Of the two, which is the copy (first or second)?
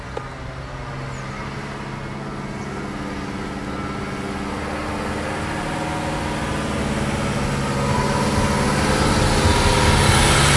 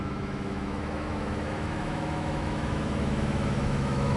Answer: second